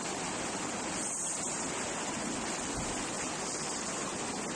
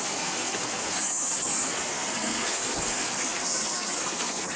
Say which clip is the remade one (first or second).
second